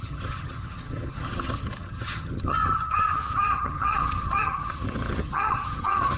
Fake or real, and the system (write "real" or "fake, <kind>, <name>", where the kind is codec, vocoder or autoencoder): fake, vocoder, HiFi-GAN